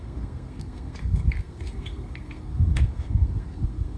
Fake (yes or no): yes